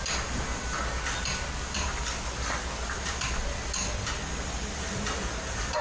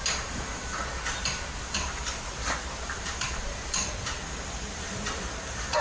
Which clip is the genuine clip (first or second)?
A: first